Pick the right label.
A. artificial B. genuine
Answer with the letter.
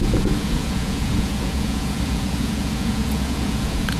A